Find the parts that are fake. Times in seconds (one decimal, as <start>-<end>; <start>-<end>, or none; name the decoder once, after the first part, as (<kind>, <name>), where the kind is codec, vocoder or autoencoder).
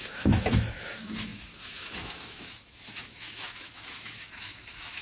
0.0-5.0 (autoencoder, DAC-VAE)